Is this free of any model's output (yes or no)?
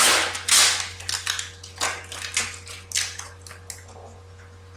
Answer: yes